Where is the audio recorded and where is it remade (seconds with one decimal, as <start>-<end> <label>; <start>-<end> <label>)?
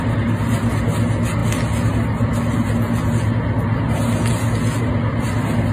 0.0-5.7 recorded